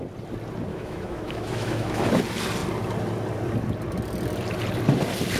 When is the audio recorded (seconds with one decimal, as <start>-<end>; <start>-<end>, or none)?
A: 0.0-0.7; 2.1-5.4